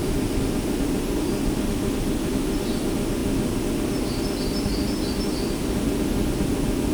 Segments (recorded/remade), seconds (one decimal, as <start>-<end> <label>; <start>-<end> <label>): 0.0-1.3 remade; 1.3-6.9 recorded